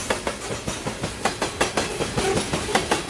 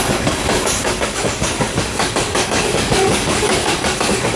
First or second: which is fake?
second